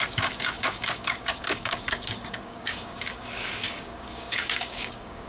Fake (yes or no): yes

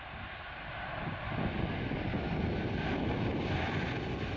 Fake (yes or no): no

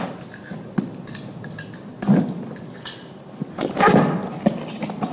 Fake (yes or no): no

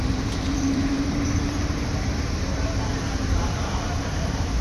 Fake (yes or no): yes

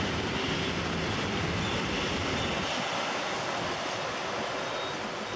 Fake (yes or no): no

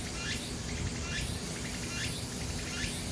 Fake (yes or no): no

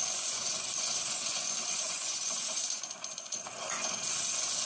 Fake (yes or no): yes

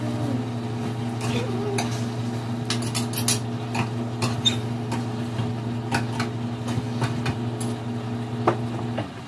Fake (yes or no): no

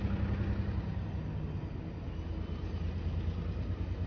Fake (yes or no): no